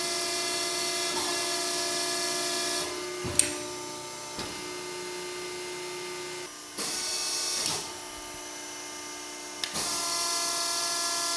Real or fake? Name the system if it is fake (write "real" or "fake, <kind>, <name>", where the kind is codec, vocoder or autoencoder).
real